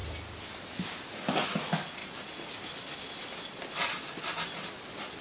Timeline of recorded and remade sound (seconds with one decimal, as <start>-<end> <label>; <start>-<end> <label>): 0.0-5.2 recorded

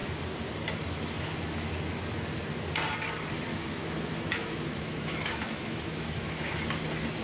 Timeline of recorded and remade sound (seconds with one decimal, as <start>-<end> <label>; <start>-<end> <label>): 0.0-3.5 recorded; 3.5-6.6 remade; 6.6-7.2 recorded

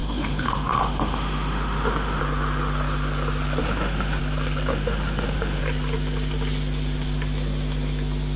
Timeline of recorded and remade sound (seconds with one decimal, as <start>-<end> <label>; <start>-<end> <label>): 0.0-2.2 remade; 2.2-3.6 recorded; 3.6-4.2 remade; 4.2-4.7 recorded; 4.7-5.6 remade; 5.6-8.4 recorded

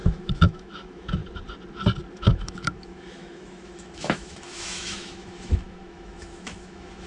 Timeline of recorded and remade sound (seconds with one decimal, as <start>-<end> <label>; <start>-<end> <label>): 0.0-1.2 remade; 1.2-2.1 recorded; 2.1-7.1 remade

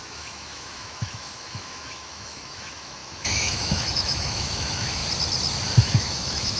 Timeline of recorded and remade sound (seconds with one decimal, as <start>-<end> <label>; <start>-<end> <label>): 0.0-5.0 remade; 5.0-5.8 recorded; 5.8-6.6 remade

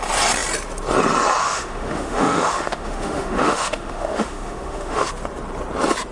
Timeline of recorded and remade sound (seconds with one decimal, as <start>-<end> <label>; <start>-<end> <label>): 0.0-1.4 recorded; 1.4-5.1 remade; 5.1-6.1 recorded